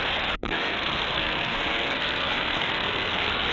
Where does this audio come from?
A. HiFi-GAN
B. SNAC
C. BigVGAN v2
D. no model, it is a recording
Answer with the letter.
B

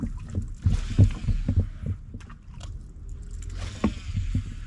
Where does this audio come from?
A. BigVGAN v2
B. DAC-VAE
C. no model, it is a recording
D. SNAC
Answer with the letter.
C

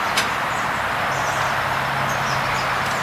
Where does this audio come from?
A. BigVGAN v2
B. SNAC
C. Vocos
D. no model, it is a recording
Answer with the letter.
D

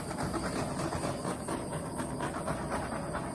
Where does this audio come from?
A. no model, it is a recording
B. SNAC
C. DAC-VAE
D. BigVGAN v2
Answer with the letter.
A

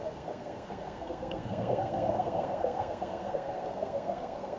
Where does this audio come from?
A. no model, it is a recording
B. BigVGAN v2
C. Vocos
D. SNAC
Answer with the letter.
D